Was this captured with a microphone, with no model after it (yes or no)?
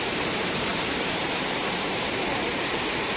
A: no